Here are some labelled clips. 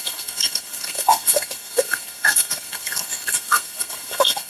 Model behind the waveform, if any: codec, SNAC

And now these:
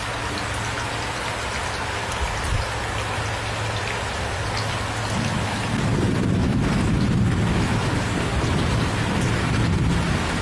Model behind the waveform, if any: none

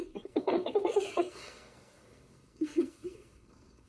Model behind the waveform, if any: codec, SNAC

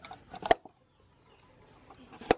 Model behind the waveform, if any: none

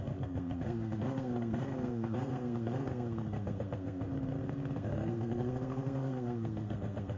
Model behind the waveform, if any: codec, SNAC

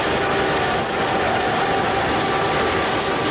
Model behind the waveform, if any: none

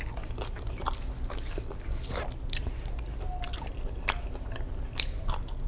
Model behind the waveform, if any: none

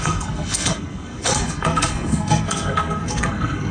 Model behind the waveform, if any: codec, SNAC